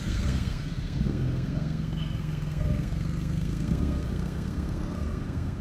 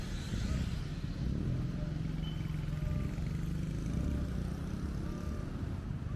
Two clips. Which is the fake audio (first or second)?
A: first